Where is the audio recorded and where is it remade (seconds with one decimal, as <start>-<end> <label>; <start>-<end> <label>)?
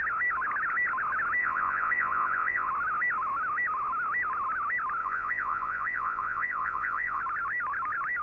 0.0-1.4 recorded; 1.4-2.7 remade; 2.7-5.0 recorded; 5.0-7.2 remade; 7.2-8.2 recorded